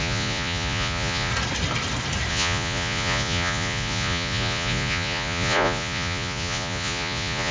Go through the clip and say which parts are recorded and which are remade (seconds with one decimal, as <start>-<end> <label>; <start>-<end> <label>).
0.0-1.3 remade; 1.3-2.3 recorded; 2.3-7.5 remade